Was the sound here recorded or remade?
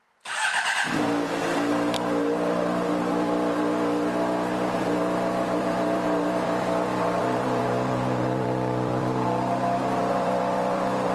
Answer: remade